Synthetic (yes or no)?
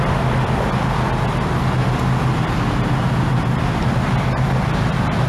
no